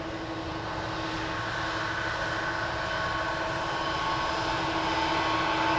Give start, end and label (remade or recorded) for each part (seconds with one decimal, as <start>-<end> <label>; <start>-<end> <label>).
0.0-5.8 recorded